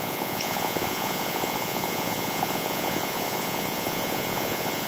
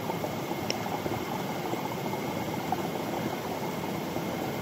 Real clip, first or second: second